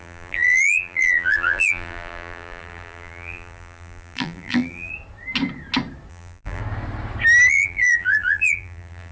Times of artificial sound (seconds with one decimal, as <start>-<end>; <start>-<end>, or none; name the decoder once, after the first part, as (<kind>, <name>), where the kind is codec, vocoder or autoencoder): 0.0-4.9 (vocoder, BigVGAN v2); 6.1-6.6; 7.5-9.1